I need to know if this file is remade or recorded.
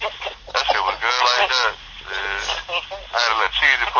recorded